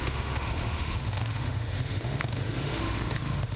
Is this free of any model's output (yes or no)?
no